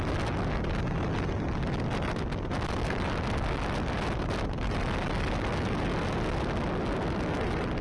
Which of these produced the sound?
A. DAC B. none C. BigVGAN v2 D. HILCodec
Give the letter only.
B